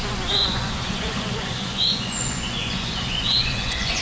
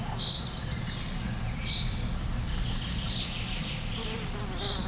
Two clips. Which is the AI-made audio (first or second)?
first